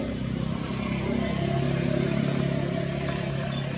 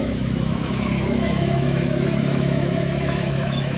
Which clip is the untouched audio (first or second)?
first